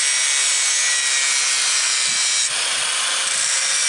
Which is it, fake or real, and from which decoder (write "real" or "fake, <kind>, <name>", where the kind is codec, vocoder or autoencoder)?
real